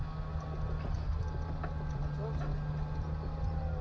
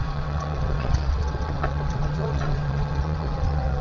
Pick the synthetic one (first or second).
second